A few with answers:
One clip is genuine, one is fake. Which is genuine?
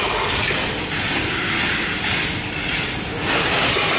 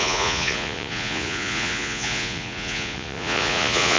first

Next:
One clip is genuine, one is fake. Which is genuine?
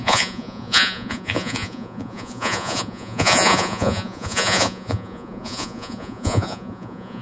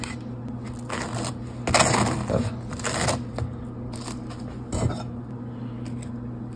second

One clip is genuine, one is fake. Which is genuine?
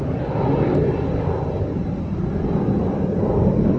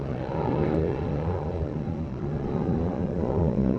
first